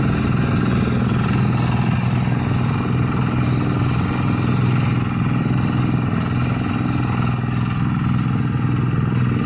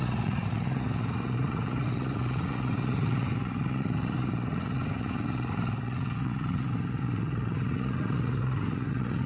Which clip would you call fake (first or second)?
second